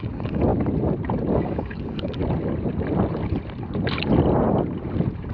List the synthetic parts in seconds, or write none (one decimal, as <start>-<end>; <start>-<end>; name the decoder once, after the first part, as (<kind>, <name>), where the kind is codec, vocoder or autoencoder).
0.0-0.5 (codec, DAC); 1.3-2.2